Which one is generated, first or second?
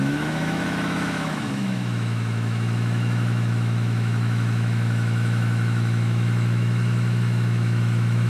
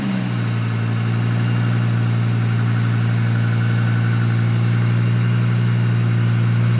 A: first